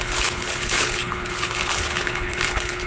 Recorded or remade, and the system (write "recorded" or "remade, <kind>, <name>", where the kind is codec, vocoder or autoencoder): remade, codec, HILCodec